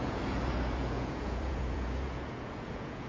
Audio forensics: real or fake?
fake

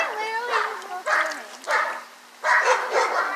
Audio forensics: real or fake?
real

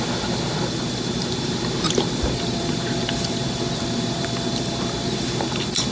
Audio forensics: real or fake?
real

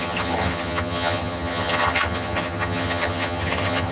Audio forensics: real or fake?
fake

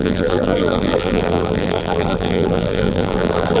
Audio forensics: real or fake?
fake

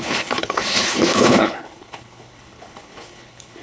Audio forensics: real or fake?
fake